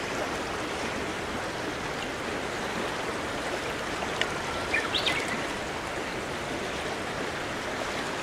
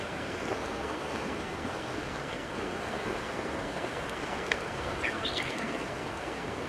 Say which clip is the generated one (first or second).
second